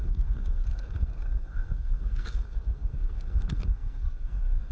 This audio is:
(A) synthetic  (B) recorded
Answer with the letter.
A